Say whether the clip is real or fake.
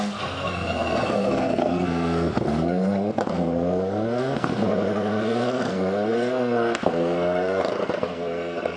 fake